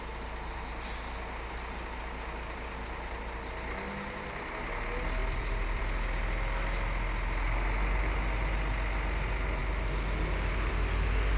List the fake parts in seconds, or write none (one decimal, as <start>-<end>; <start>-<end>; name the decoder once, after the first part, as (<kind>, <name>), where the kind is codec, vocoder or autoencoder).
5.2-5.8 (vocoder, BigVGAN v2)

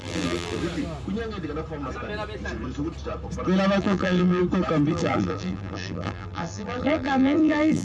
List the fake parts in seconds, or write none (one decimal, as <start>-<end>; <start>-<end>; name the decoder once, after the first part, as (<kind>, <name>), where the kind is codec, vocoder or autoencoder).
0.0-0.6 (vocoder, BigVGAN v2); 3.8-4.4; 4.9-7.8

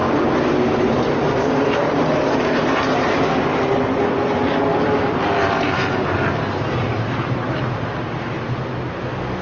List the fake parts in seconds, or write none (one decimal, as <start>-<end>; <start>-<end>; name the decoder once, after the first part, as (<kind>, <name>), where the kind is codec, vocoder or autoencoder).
0.0-3.2 (vocoder, BigVGAN v2); 4.7-6.3; 6.8-8.3